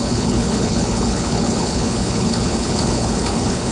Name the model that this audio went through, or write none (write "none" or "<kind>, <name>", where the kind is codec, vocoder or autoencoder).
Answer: codec, HILCodec